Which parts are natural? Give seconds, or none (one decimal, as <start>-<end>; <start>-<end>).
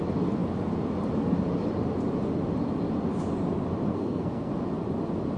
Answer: 0.0-3.9; 4.5-5.4